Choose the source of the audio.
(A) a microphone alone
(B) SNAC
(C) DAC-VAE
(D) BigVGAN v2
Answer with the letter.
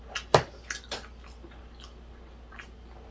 A